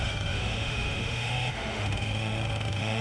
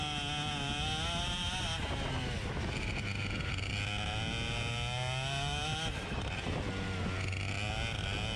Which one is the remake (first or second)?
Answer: first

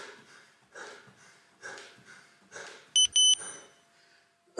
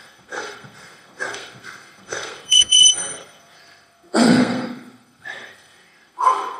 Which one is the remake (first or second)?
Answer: second